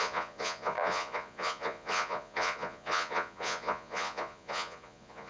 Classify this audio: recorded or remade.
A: remade